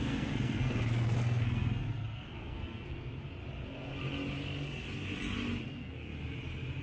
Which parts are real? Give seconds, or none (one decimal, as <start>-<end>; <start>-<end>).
3.1-5.6; 6.1-6.8